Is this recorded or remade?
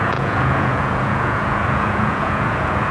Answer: remade